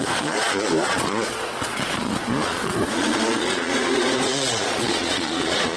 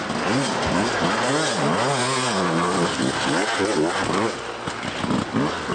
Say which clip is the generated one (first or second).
first